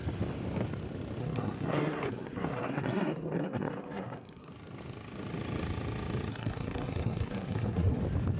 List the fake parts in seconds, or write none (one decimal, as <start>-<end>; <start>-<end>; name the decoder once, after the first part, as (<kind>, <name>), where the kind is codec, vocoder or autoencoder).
1.2-4.5 (codec, SNAC); 6.3-8.0